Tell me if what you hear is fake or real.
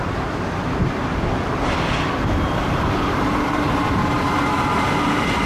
real